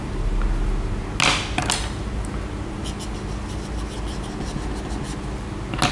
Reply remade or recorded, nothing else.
recorded